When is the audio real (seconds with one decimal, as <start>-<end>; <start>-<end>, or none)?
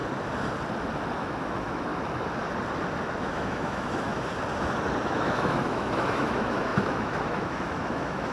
0.0-1.2; 1.9-3.2; 4.3-5.0